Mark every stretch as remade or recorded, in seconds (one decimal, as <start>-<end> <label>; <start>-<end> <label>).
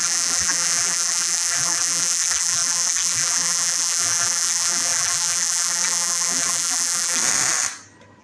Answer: 0.0-7.2 remade; 7.2-8.2 recorded